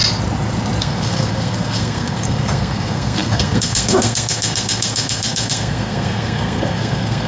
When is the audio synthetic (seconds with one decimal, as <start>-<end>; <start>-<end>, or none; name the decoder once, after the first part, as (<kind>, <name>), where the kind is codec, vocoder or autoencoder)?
0.8-7.3 (codec, SNAC)